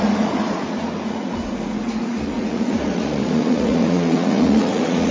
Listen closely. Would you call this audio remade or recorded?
remade